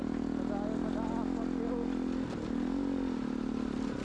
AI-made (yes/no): no